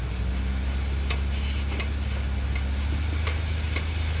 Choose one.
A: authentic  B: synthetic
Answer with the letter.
A